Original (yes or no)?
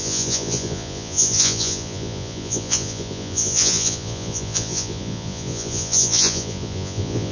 no